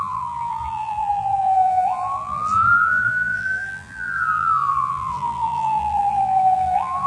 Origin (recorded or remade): remade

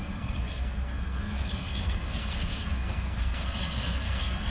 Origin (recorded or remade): remade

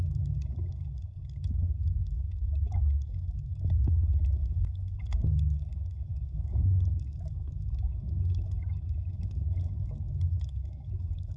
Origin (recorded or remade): remade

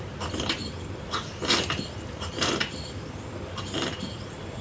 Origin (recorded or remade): remade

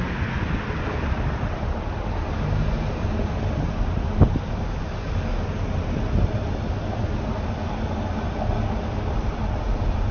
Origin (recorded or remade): recorded